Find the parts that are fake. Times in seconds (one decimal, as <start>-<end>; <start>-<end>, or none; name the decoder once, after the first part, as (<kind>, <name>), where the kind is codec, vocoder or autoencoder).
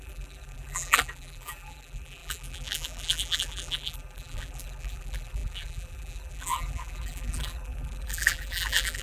0.0-9.0 (vocoder, BigVGAN v2)